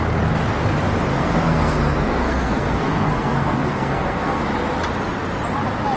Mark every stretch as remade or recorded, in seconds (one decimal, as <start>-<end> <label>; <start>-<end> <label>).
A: 0.0-1.1 recorded; 1.1-4.4 remade; 4.4-6.0 recorded